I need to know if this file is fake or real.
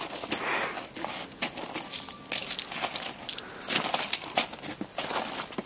real